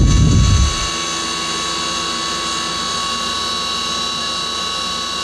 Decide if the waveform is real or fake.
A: real